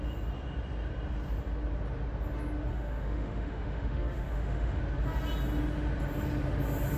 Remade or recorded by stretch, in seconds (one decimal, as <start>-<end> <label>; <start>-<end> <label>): 0.0-2.7 recorded; 2.7-4.8 remade; 4.8-7.0 recorded